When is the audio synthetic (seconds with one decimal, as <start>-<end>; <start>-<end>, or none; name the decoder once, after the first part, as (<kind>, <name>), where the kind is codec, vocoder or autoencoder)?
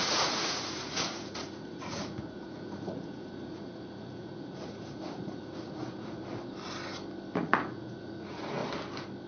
0.0-6.2 (vocoder, Vocos); 7.4-8.6